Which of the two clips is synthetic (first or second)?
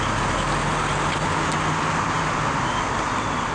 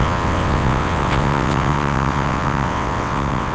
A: second